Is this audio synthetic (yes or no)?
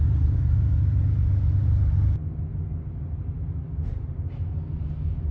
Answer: no